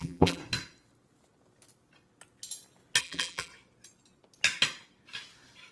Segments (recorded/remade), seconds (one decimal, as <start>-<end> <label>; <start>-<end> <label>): 0.0-0.4 remade; 0.4-3.0 recorded; 3.0-3.5 remade; 3.5-5.7 recorded